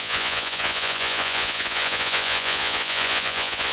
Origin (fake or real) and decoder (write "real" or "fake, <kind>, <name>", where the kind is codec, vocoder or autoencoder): fake, vocoder, Vocos